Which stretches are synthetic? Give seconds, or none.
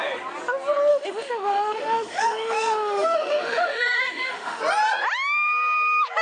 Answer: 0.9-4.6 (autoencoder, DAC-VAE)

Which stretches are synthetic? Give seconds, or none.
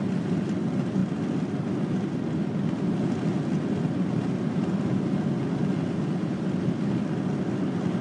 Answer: none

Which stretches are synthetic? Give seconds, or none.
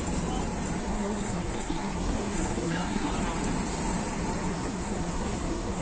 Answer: 0.8-3.1 (codec, SNAC); 4.5-5.8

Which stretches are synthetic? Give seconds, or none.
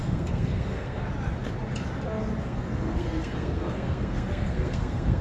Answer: 0.0-1.0 (codec, SNAC); 2.4-5.2